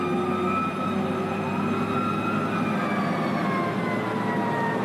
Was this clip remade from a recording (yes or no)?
no